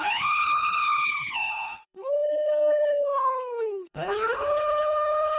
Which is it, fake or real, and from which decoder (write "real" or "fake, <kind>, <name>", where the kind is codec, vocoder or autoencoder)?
fake, codec, HILCodec